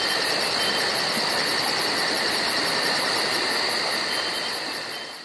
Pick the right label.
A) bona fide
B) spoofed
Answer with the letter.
A